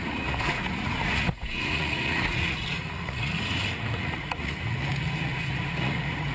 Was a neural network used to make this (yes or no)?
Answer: yes